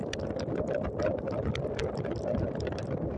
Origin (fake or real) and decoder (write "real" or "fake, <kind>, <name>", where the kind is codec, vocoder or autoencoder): real